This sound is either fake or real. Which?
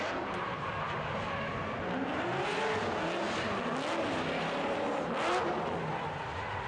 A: real